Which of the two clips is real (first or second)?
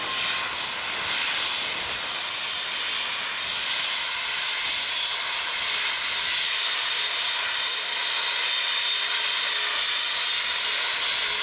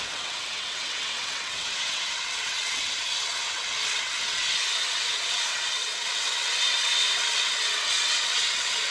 first